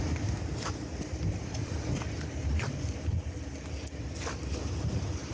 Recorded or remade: recorded